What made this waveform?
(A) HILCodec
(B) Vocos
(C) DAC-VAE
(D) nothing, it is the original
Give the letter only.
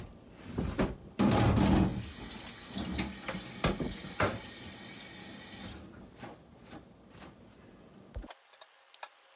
D